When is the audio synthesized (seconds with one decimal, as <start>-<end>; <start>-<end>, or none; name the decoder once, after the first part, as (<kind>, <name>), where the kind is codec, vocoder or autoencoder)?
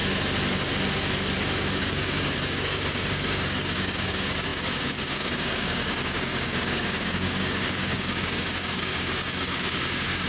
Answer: 1.8-10.3 (codec, DAC)